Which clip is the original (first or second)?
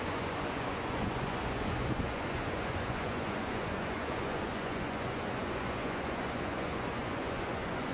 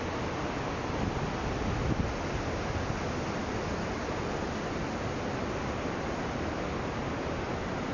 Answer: second